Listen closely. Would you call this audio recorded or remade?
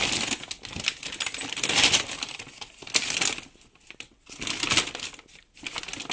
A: recorded